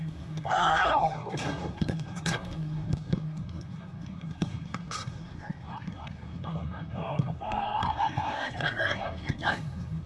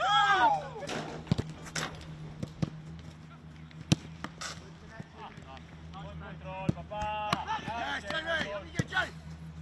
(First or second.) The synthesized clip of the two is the first